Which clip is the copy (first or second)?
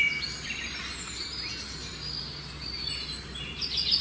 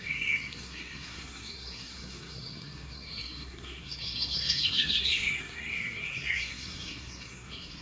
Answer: second